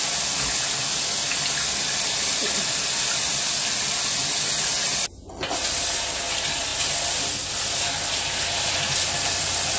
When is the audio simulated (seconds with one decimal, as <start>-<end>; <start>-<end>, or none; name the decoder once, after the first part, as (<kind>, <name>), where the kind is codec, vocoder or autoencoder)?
none